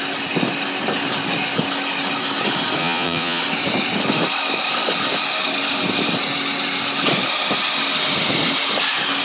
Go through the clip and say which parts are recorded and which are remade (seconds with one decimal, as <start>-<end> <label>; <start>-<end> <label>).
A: 0.0-2.8 recorded; 2.8-3.4 remade; 3.4-9.2 recorded